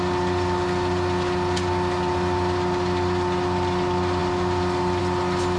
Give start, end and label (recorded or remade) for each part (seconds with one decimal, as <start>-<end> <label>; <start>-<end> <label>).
0.0-5.6 recorded